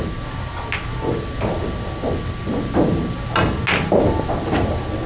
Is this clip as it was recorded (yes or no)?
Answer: yes